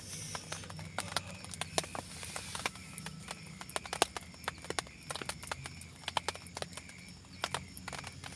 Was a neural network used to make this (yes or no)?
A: no